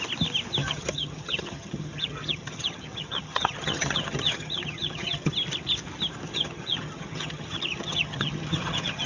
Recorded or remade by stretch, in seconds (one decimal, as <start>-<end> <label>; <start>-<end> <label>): 0.0-0.6 recorded; 0.6-5.3 remade; 5.3-6.3 recorded; 6.3-9.1 remade